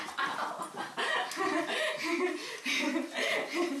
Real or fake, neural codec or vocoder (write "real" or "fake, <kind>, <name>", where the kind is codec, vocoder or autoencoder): real